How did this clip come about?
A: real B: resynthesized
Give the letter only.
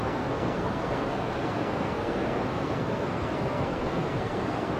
B